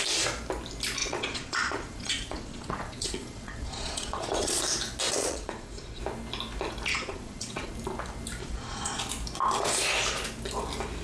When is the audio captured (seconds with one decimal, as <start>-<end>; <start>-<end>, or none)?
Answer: 0.0-1.0; 4.6-5.2; 6.0-6.9; 7.7-8.4; 9.0-11.0